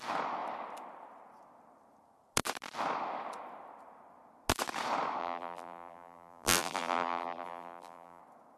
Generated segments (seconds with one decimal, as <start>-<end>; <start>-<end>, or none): 5.2-8.2